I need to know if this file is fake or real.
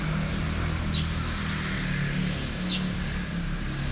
real